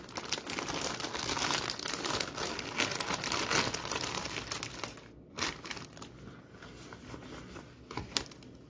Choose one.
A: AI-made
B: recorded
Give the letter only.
B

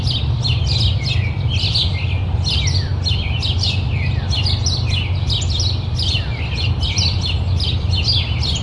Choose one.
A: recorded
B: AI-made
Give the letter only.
A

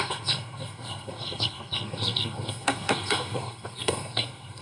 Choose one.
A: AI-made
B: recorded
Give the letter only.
A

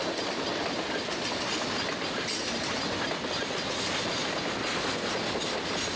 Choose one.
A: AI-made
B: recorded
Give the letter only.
B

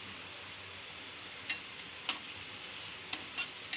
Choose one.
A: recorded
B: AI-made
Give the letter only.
A